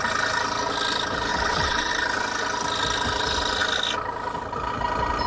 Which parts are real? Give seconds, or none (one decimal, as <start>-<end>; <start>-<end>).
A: 0.0-1.3; 1.9-5.3